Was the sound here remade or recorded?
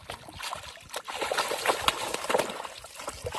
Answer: recorded